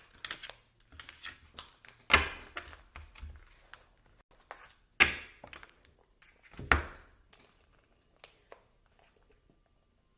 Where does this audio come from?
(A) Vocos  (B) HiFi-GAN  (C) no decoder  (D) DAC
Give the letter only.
C